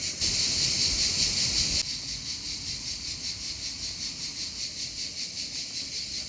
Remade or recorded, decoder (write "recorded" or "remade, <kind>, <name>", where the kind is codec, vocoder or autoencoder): recorded